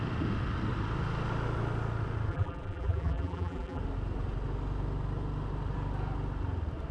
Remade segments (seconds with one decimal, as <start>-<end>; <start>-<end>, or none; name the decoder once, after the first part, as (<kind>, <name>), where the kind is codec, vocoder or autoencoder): 2.3-3.8 (vocoder, BigVGAN v2)